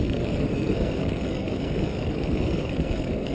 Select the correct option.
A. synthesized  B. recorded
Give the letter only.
A